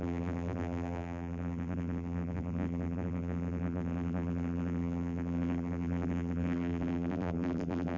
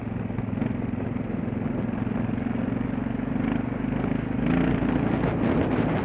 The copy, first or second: first